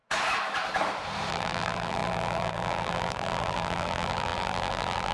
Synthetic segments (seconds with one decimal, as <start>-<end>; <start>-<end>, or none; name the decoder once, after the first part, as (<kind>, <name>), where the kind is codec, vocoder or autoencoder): 1.3-5.1 (vocoder, BigVGAN v2)